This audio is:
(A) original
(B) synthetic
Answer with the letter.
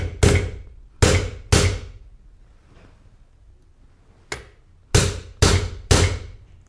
A